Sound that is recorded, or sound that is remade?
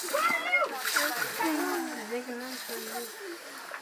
recorded